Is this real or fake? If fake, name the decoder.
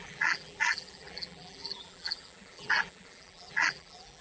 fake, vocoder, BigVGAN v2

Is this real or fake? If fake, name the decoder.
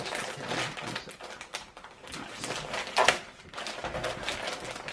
real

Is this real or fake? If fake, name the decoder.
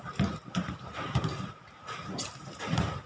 fake, vocoder, BigVGAN v2